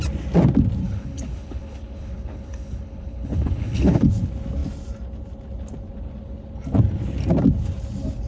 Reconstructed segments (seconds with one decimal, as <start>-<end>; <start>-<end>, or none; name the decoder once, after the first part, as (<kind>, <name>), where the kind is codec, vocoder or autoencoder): 0.8-4.1 (codec, HILCodec)